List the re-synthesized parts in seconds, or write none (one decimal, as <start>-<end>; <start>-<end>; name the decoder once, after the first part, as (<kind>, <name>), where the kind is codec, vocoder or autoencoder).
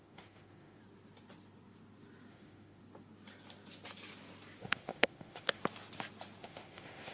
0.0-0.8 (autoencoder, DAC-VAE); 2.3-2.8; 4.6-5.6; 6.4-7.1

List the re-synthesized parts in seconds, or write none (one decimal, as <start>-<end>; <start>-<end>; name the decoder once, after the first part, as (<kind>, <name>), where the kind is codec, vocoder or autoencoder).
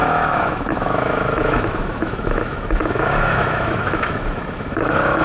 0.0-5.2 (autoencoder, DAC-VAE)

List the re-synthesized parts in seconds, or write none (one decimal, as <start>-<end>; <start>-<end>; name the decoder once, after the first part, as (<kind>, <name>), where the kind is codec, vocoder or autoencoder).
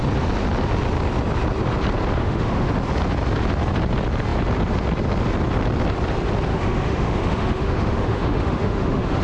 2.2-2.7 (autoencoder, DAC-VAE); 6.5-9.2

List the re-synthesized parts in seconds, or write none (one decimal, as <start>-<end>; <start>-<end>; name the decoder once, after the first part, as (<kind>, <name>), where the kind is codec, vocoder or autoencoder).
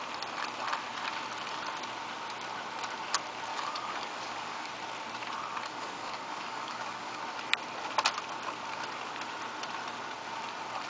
3.5-4.7 (codec, DAC); 5.5-7.2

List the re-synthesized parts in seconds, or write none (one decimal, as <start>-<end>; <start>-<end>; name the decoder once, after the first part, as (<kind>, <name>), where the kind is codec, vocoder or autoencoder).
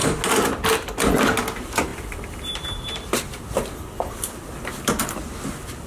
1.9-5.4 (vocoder, BigVGAN v2)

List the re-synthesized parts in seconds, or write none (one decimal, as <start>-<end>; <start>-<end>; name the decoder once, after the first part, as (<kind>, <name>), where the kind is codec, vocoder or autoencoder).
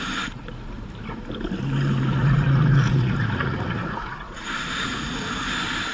2.1-5.1 (vocoder, Vocos)